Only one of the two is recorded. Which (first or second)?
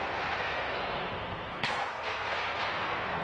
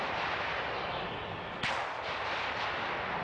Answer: second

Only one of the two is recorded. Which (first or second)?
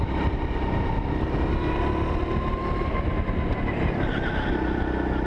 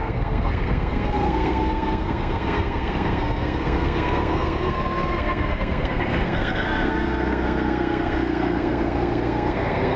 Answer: first